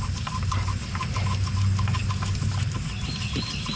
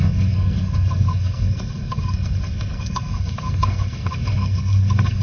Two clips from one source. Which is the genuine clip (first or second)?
first